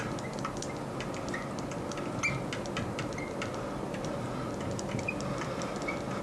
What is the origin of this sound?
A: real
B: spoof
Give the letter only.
A